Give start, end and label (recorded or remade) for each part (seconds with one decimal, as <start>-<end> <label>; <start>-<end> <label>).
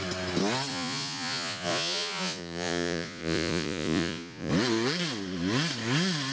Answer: 0.0-0.7 recorded; 0.7-4.5 remade; 4.5-6.3 recorded